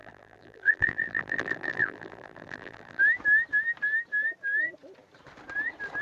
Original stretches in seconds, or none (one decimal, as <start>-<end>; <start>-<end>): 3.0-6.0